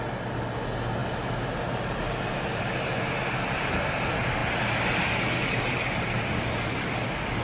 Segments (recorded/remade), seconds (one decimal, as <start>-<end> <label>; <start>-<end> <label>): 0.0-1.0 recorded; 1.0-2.6 remade; 2.6-4.4 recorded; 4.4-5.0 remade; 5.0-7.4 recorded